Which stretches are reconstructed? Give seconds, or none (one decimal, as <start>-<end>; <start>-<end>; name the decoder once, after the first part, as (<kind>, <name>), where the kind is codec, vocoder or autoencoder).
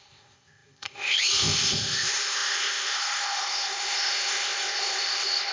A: 0.0-5.5 (codec, ZipCodec)